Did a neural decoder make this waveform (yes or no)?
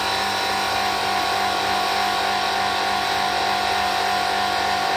no